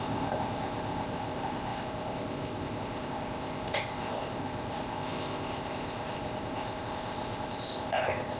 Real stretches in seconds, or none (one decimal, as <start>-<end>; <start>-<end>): none